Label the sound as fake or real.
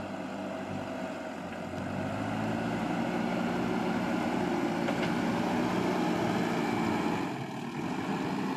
real